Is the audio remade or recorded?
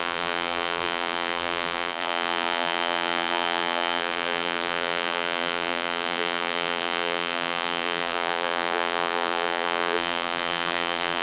remade